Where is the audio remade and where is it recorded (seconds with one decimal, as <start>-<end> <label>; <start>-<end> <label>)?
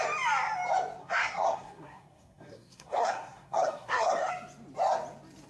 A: 0.0-1.0 recorded; 1.0-4.3 remade; 4.3-5.5 recorded